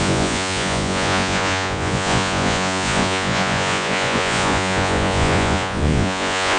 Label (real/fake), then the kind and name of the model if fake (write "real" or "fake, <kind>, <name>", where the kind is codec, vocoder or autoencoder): fake, vocoder, Vocos